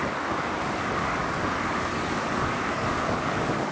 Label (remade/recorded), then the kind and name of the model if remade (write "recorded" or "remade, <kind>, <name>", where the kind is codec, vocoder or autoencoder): remade, codec, DAC